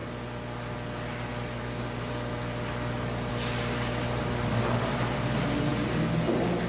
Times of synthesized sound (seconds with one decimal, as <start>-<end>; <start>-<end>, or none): none